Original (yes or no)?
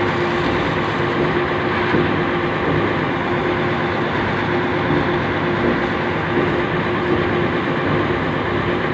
yes